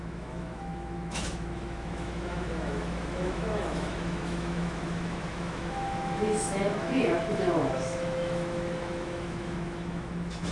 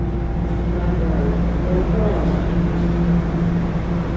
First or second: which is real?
second